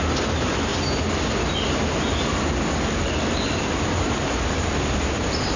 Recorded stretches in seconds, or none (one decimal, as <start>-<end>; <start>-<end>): 0.7-3.0